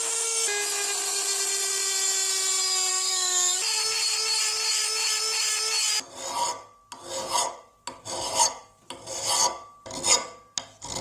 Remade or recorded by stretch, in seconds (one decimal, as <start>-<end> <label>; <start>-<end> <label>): 0.0-2.9 recorded; 2.9-3.6 remade; 3.6-11.0 recorded